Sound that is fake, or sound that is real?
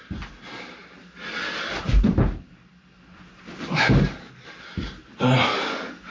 real